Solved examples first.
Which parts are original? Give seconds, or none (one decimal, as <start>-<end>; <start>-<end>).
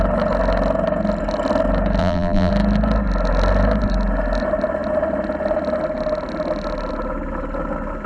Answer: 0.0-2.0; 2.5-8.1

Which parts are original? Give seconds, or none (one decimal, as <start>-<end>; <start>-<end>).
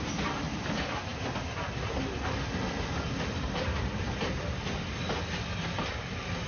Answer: 0.0-6.5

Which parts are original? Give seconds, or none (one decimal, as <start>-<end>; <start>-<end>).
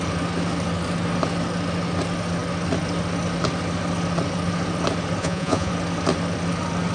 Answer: 0.0-5.2; 5.7-6.9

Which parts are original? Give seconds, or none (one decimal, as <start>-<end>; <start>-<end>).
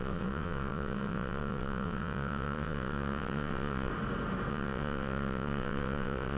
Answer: 3.9-4.5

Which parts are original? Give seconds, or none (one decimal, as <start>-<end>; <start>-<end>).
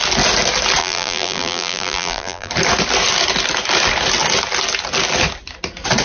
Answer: 0.0-0.8; 2.5-6.0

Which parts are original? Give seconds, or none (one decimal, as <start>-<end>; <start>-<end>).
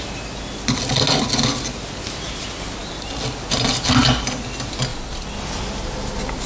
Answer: 0.0-4.9; 5.5-6.5